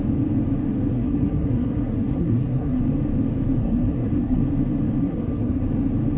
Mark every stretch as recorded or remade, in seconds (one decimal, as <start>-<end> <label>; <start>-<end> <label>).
0.0-0.9 recorded; 0.9-2.8 remade; 2.8-3.6 recorded; 3.6-4.4 remade; 4.4-5.0 recorded; 5.0-5.6 remade; 5.6-6.2 recorded